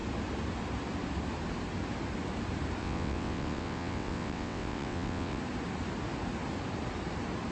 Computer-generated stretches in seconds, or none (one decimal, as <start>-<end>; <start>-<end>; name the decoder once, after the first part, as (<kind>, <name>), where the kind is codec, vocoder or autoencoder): 2.8-5.4 (vocoder, WaveNeXt)